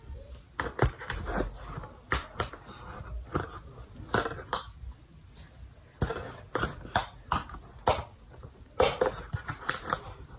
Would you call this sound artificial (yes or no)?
no